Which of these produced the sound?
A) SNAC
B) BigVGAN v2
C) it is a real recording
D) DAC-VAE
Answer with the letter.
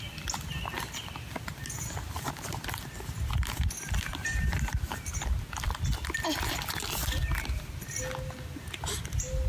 C